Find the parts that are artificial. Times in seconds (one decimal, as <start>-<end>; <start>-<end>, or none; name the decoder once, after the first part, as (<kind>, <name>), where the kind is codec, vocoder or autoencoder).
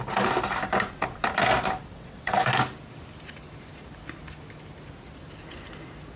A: 1.9-2.4 (vocoder, WaveNeXt)